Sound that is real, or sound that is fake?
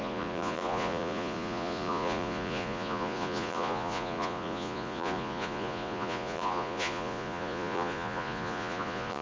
fake